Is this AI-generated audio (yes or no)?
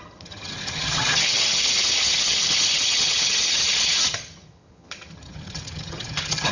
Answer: yes